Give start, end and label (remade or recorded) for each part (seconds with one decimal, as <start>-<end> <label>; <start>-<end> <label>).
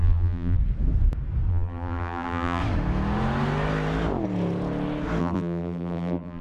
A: 0.0-0.6 remade; 0.6-1.5 recorded; 1.5-2.6 remade; 2.6-5.2 recorded; 5.2-6.4 remade